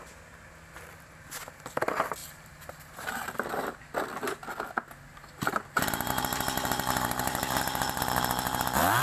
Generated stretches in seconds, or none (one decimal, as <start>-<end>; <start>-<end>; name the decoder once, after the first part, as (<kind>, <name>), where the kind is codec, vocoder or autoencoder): 2.2-3.8 (vocoder, BigVGAN v2); 5.1-9.0